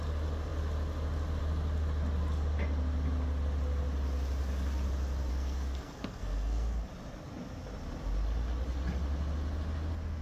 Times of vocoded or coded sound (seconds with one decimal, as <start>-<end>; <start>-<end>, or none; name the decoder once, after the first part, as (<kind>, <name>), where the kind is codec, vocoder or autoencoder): 5.3-6.9 (codec, SNAC)